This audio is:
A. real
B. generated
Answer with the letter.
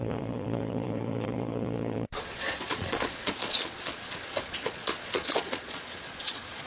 B